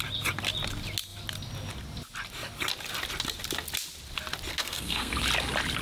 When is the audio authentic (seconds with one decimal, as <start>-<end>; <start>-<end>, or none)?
0.0-4.5; 5.1-5.8

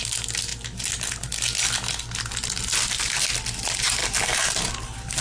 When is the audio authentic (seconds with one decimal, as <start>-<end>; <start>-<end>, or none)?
0.0-5.2